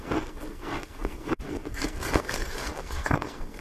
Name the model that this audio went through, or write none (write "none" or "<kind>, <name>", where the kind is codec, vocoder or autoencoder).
codec, SNAC